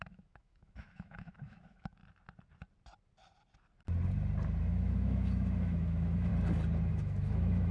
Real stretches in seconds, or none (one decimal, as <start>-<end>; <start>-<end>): 2.0-4.6; 6.3-6.9